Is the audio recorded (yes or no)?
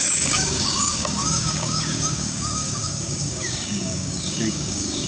no